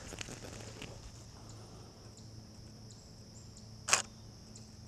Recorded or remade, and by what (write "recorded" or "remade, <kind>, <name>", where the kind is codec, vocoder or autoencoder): recorded